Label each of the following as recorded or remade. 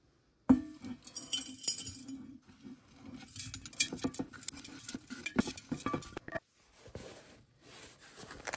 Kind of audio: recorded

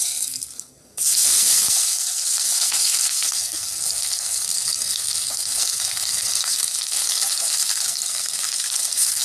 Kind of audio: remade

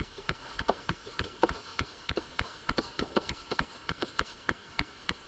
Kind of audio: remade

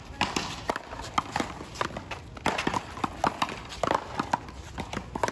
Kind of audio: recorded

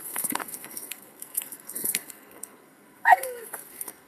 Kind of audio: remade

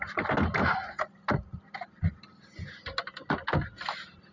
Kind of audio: recorded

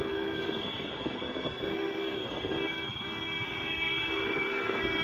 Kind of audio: remade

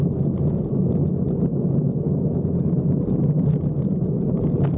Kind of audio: recorded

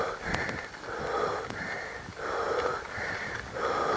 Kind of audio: recorded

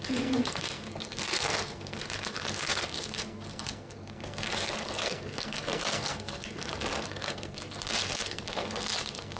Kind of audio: remade